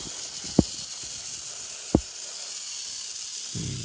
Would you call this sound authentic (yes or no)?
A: yes